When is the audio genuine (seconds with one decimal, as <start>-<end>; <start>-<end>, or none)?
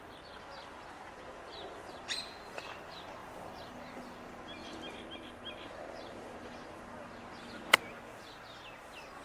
0.0-3.2; 3.7-4.6; 7.1-9.2